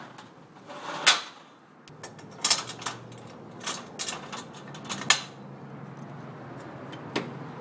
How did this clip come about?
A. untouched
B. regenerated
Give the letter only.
A